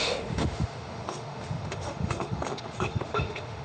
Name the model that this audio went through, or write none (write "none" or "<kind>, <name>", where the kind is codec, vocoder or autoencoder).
autoencoder, DAC-VAE